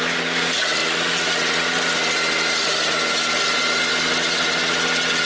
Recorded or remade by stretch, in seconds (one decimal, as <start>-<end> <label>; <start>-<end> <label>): 0.0-5.3 recorded